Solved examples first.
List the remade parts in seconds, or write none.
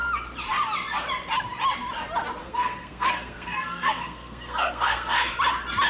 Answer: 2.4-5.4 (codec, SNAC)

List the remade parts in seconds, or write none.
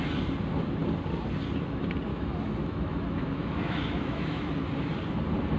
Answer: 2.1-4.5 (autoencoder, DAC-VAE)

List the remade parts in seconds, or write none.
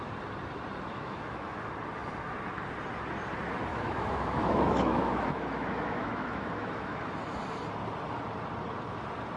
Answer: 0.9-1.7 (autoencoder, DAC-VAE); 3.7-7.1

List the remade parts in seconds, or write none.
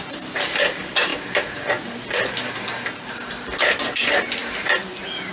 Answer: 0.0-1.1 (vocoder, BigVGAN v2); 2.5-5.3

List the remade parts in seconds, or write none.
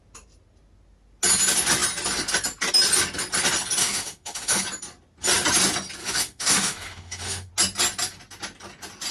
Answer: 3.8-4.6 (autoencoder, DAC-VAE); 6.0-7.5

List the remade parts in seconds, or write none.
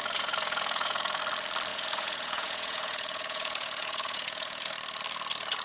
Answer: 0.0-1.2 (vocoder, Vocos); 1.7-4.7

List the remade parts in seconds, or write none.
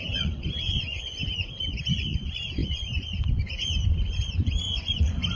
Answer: 0.0-5.4 (vocoder, Vocos)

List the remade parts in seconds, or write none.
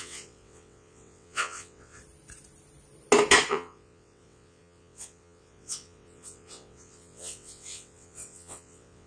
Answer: 0.0-2.0 (vocoder, WaveNeXt); 3.5-9.1